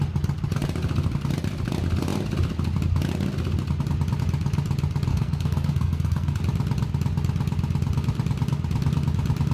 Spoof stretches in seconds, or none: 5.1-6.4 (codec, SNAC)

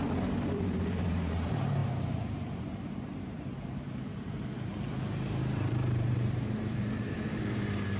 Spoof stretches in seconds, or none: 0.0-4.7 (vocoder, BigVGAN v2); 5.7-8.0

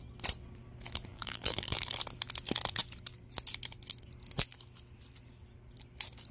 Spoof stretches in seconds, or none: 1.1-1.8 (vocoder, BigVGAN v2)

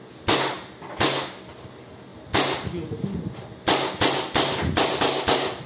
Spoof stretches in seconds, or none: none